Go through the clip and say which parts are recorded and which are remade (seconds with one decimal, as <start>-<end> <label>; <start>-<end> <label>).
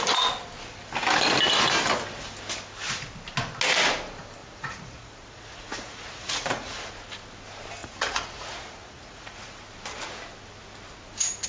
0.0-4.4 recorded; 4.4-6.9 remade; 6.9-7.8 recorded; 7.8-9.6 remade; 9.6-11.5 recorded